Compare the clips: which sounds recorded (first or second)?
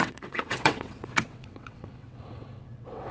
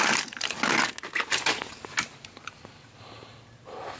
second